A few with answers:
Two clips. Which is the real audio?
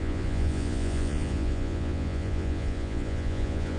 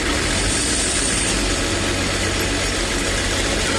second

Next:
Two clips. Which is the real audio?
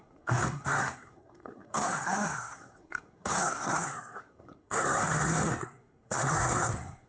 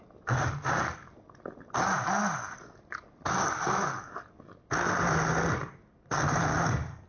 second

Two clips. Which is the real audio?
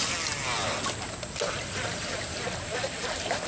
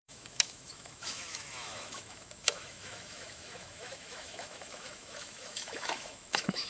first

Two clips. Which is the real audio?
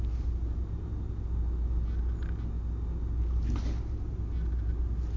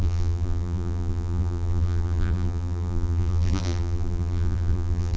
first